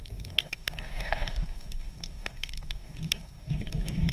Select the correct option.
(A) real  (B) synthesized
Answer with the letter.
B